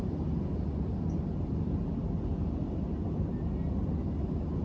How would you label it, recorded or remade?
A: recorded